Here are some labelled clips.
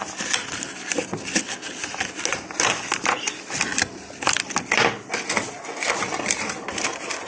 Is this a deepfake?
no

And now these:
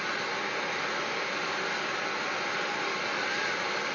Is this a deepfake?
no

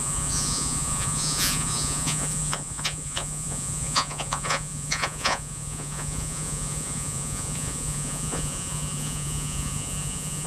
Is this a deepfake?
yes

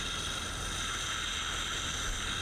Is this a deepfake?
no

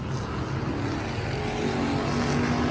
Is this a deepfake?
no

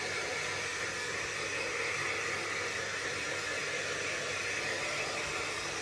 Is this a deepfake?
no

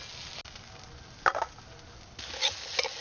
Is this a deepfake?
no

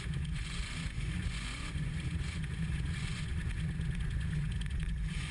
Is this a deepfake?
yes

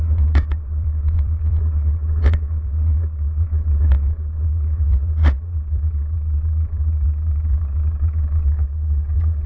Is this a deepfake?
yes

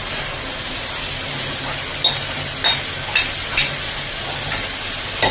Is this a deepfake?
no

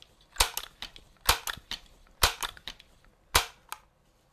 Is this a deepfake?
no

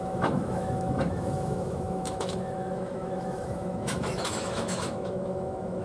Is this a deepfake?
yes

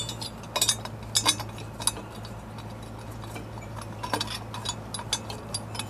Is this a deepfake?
no